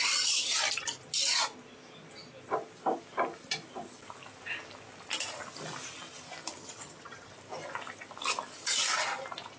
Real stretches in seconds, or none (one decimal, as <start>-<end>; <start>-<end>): 0.0-6.6; 7.3-9.6